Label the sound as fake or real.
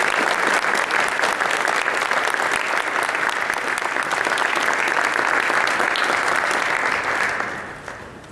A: real